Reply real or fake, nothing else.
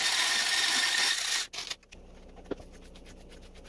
real